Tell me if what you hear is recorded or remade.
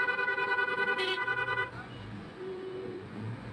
remade